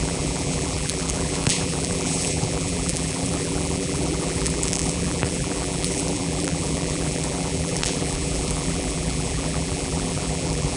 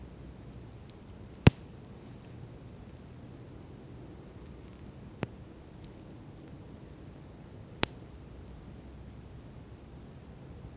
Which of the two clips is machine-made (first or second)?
first